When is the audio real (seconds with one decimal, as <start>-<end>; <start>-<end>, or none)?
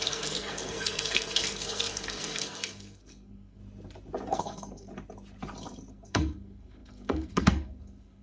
3.6-4.3; 4.9-5.9